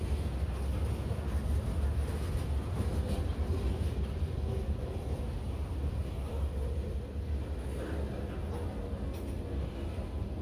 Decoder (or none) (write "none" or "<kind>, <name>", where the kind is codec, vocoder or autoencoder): none